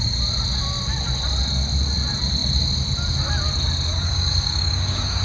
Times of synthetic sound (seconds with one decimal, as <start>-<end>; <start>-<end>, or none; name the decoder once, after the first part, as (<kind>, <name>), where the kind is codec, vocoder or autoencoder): 3.9-5.2 (codec, DAC)